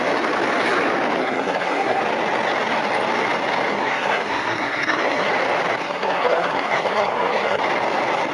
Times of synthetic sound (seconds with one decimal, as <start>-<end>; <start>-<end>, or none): 1.2-2.0; 3.7-5.3; 5.8-7.6